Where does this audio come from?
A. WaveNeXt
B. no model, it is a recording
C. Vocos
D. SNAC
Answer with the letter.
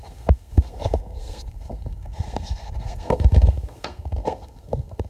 D